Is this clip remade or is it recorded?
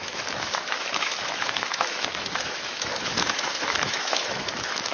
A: remade